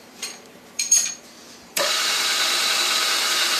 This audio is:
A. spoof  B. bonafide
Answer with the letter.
A